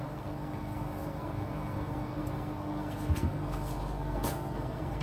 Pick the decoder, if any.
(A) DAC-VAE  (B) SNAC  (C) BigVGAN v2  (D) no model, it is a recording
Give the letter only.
B